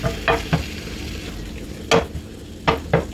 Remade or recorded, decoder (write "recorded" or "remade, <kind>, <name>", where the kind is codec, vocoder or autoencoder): recorded